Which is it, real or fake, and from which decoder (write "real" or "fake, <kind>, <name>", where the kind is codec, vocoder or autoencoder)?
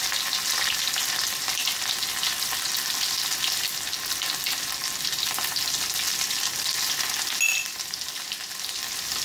real